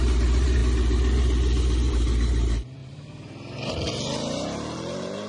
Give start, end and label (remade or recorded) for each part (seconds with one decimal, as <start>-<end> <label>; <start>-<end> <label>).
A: 0.0-0.6 remade; 0.6-1.9 recorded; 1.9-5.3 remade